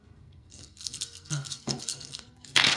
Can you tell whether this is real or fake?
fake